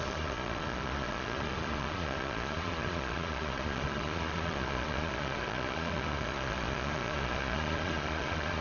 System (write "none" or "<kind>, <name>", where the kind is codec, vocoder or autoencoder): vocoder, Vocos